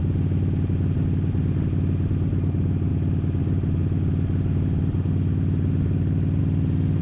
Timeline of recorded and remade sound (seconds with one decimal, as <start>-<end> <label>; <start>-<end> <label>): 0.0-7.0 recorded